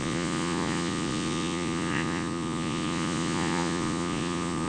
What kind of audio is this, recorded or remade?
remade